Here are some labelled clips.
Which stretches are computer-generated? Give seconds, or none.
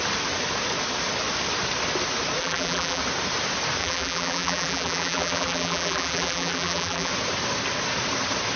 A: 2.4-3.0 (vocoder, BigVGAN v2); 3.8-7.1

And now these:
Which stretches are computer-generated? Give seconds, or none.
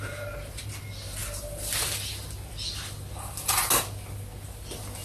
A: none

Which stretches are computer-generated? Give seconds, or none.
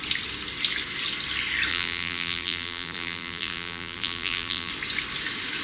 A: 1.7-4.7 (vocoder, BigVGAN v2)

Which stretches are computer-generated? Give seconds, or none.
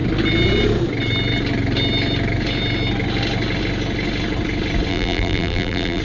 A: 4.9-6.0 (vocoder, BigVGAN v2)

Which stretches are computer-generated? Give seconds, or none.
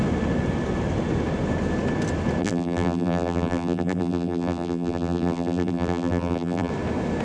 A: 2.4-6.7 (vocoder, BigVGAN v2)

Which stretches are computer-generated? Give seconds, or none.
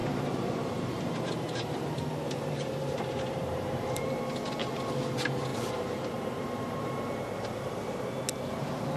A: 0.0-4.2 (vocoder, BigVGAN v2); 5.5-8.0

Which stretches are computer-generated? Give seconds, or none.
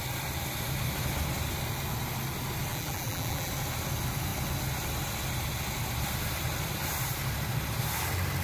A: 2.7-3.5 (vocoder, BigVGAN v2)